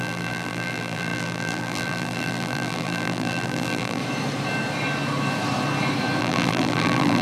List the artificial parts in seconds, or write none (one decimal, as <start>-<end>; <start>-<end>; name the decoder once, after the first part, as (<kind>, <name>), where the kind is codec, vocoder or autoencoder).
0.0-4.0 (vocoder, BigVGAN v2); 6.2-7.2